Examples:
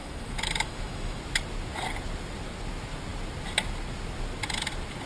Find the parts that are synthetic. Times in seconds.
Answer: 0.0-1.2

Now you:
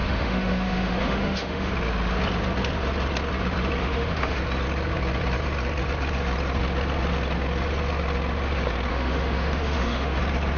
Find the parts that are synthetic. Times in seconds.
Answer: 0.0-1.7; 3.8-4.4; 8.9-10.2

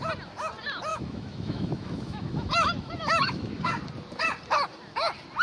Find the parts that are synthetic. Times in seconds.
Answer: 0.9-3.7

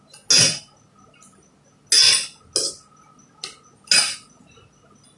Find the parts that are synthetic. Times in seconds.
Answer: none

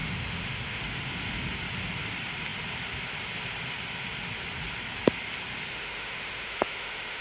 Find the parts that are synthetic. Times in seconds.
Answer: 0.0-0.8; 5.7-7.2

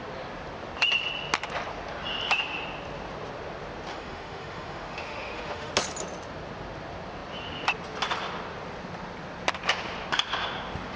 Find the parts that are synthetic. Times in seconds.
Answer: 3.9-5.7